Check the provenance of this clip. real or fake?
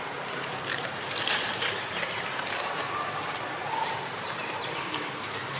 real